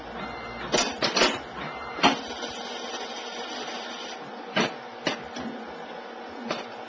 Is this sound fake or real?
real